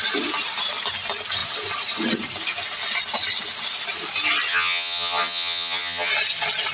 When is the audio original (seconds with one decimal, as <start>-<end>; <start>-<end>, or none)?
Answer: 0.0-4.5; 6.1-6.7

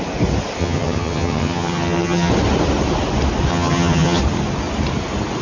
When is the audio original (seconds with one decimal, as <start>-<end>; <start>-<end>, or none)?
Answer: 0.0-0.6; 2.3-3.5; 4.2-5.4